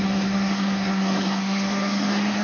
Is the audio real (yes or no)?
no